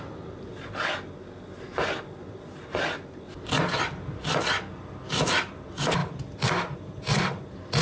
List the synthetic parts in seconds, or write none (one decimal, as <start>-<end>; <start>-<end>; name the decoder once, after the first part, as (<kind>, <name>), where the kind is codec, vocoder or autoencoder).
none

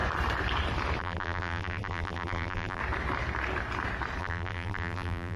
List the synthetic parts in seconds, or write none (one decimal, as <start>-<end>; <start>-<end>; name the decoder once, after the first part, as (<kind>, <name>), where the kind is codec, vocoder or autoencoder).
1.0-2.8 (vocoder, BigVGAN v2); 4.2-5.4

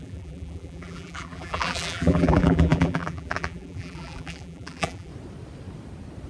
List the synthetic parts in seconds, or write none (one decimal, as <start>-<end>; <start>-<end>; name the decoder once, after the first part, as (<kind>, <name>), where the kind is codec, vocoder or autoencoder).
0.0-5.1 (vocoder, BigVGAN v2)

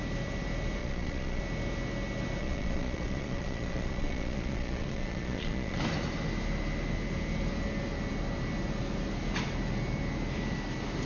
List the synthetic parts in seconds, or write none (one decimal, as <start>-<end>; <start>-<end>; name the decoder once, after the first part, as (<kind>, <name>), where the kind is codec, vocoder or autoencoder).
0.8-1.4 (vocoder, Vocos); 2.4-5.8

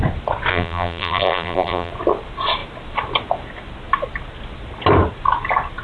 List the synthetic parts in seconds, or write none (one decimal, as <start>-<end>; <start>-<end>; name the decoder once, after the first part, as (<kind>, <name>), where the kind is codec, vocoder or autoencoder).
0.5-1.9 (vocoder, BigVGAN v2)

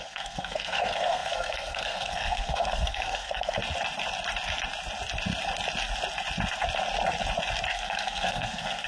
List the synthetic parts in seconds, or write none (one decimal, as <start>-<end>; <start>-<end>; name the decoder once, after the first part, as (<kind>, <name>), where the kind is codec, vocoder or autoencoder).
0.0-3.6 (codec, SNAC); 7.7-8.9

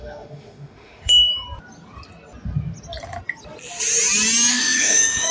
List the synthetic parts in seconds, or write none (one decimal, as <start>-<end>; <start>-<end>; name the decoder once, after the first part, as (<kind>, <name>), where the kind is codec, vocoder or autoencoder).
0.0-1.3 (autoencoder, DAC-VAE); 4.5-5.3